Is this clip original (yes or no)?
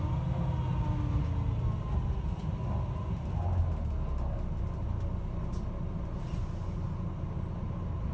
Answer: yes